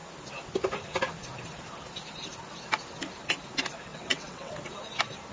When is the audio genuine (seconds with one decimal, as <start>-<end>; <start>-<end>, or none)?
0.0-3.9; 4.5-5.3